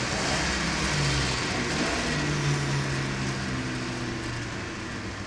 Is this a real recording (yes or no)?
yes